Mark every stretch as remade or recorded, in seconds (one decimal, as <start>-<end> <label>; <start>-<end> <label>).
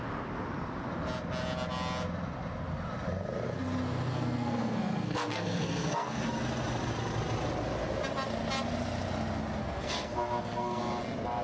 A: 0.0-4.1 recorded; 4.1-6.2 remade; 6.2-9.6 recorded; 9.6-10.8 remade; 10.8-11.4 recorded